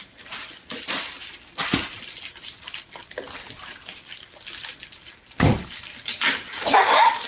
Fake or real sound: real